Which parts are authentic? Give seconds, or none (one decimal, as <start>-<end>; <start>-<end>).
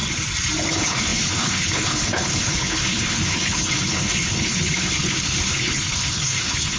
0.0-0.7